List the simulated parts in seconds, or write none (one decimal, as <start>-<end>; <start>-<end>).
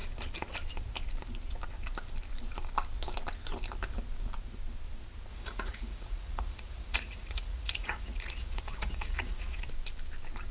5.3-9.6